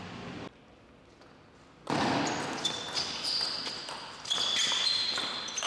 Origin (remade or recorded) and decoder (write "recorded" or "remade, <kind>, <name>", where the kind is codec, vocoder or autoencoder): recorded